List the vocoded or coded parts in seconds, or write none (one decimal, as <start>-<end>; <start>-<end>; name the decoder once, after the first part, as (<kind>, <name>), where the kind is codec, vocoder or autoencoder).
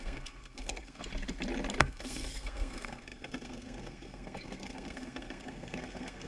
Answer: 0.0-1.0 (codec, SNAC); 1.8-6.3